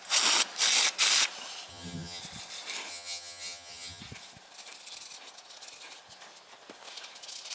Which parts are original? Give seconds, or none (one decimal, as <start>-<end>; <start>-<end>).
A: 0.0-1.7; 2.2-2.9; 4.0-7.5

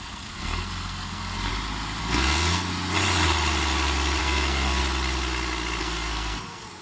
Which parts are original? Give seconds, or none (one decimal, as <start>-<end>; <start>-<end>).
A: 1.5-2.0; 2.7-4.2; 4.8-5.8